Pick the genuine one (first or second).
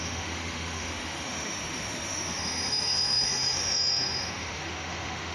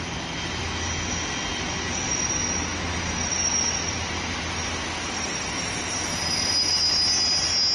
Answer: second